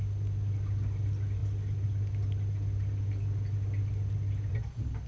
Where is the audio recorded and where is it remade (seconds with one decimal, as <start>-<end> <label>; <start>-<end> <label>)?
0.0-5.1 recorded